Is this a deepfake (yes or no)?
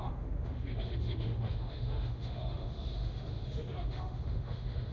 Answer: yes